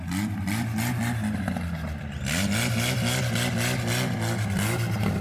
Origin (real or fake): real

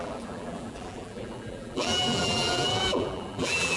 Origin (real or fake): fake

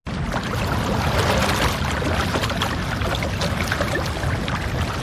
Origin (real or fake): real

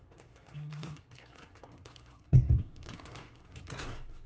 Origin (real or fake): fake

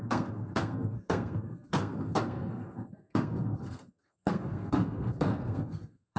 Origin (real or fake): fake